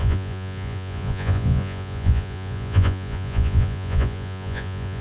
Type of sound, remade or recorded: remade